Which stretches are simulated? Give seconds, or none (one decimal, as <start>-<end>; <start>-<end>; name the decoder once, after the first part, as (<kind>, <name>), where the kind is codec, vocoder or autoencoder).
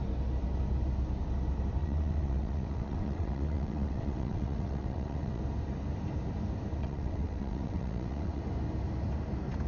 1.8-5.4 (vocoder, WaveNeXt); 6.8-8.4